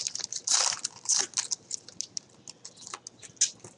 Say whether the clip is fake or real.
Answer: real